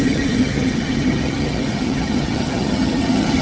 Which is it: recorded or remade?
remade